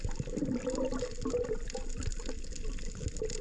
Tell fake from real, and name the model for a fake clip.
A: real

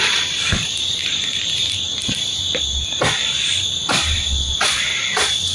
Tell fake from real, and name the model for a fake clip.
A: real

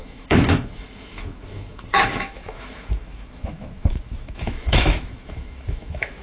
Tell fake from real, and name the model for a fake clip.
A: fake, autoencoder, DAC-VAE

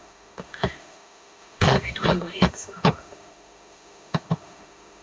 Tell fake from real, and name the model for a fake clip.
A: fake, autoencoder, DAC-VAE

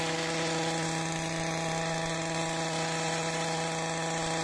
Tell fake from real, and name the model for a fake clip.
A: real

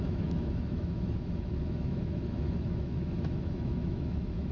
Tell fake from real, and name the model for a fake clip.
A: fake, autoencoder, DAC-VAE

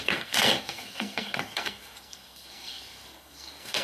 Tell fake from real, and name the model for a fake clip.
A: fake, codec, SNAC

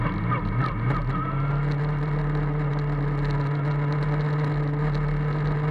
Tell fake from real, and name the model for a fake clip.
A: real